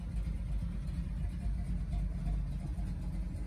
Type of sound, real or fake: real